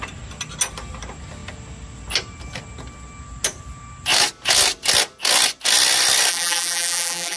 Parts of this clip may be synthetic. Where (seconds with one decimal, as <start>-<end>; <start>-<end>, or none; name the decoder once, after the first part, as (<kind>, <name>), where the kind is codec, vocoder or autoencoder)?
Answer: 6.3-7.4 (vocoder, BigVGAN v2)